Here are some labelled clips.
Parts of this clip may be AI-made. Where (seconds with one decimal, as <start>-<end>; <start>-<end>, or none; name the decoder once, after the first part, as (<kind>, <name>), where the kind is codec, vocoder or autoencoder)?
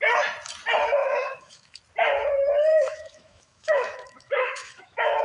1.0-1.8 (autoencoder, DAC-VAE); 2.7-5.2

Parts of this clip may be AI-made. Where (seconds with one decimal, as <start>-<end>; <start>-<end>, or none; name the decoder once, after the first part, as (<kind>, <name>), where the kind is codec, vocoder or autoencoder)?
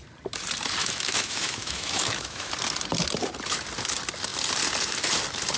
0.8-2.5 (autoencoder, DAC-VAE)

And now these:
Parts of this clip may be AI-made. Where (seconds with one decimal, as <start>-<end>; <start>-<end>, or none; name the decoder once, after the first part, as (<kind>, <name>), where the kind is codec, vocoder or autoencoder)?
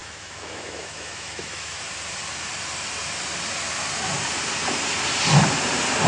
0.0-1.8 (autoencoder, DAC-VAE)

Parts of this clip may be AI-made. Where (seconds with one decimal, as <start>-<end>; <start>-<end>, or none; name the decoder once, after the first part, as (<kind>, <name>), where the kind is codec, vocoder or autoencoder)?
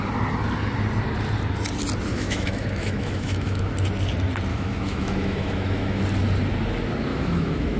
2.1-3.7 (autoencoder, DAC-VAE); 4.5-6.0; 7.1-7.8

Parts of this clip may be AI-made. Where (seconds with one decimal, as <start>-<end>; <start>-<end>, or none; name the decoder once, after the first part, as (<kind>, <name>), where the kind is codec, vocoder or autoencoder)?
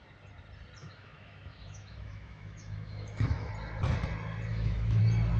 0.8-3.5 (autoencoder, DAC-VAE); 4.5-5.0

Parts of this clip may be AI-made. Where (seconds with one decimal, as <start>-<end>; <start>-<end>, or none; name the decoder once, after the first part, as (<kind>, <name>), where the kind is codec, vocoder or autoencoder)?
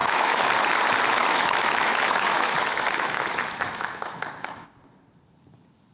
0.0-0.5 (autoencoder, DAC-VAE); 1.2-4.7